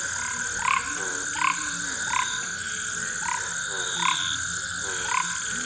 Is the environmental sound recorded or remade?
recorded